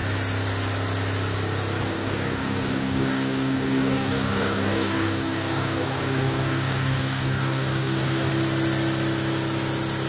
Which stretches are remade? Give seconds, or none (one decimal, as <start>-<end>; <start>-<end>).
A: 1.8-8.3